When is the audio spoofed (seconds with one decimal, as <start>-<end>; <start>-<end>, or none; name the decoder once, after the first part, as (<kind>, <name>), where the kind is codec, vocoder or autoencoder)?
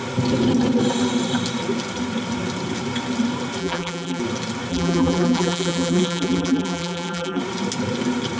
3.6-4.2 (vocoder, BigVGAN v2); 4.7-7.4